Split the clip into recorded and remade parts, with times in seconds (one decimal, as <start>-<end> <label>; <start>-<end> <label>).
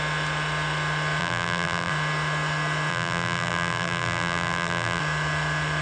0.0-1.2 recorded; 1.2-1.9 remade; 1.9-2.9 recorded; 2.9-5.0 remade; 5.0-5.8 recorded